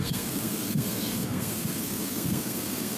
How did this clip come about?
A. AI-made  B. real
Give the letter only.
A